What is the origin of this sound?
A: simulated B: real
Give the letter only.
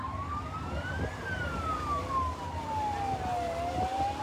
B